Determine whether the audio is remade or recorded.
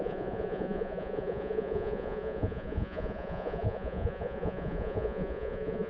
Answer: remade